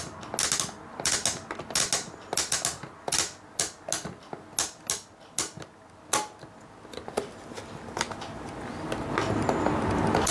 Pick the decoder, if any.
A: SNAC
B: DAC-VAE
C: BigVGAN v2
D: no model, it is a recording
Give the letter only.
D